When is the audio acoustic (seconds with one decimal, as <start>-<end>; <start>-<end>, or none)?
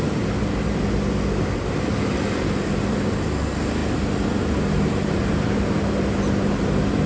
0.0-7.1